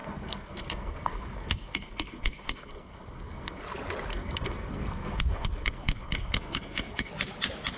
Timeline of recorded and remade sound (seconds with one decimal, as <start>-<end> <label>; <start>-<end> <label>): 0.0-3.6 remade; 3.6-4.1 recorded; 4.1-7.1 remade; 7.1-7.8 recorded